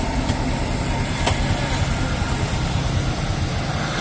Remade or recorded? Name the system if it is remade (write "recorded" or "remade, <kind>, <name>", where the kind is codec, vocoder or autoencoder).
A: recorded